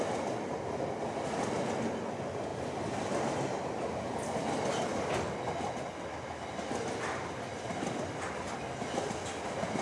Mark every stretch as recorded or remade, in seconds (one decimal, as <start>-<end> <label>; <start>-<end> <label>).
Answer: 0.0-9.8 recorded